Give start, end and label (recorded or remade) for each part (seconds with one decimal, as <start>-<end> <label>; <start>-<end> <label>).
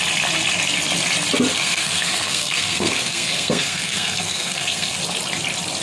0.0-1.5 recorded; 1.5-5.0 remade; 5.0-5.8 recorded